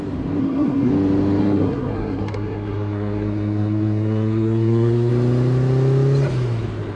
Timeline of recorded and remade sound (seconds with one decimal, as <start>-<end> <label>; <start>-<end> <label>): 0.0-0.4 recorded; 0.4-0.9 remade; 0.9-1.4 recorded; 1.4-5.1 remade; 5.1-7.0 recorded